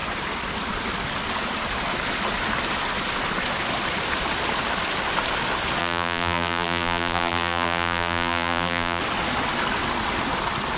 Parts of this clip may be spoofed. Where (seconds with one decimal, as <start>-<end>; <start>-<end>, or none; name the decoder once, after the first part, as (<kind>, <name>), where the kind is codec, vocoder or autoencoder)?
5.8-9.0 (vocoder, BigVGAN v2)